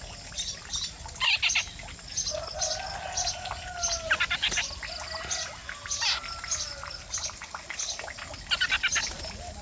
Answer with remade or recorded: recorded